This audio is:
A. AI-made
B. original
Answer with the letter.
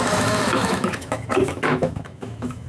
A